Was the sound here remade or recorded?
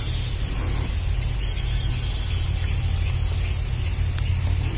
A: recorded